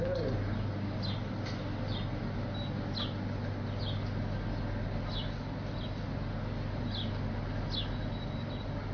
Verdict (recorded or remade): recorded